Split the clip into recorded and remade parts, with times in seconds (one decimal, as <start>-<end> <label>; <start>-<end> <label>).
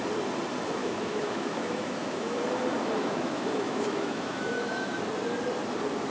0.0-0.8 recorded; 0.8-2.4 remade; 2.4-3.0 recorded; 3.0-5.0 remade; 5.0-6.1 recorded